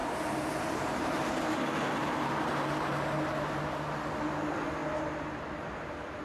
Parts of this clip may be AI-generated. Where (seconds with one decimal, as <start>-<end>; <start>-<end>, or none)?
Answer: 0.0-3.7